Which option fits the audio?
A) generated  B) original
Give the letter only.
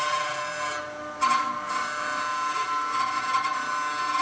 B